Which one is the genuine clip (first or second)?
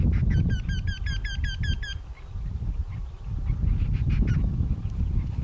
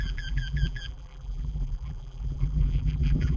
first